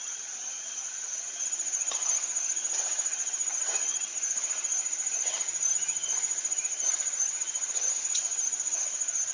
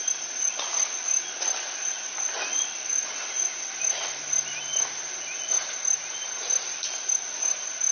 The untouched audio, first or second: second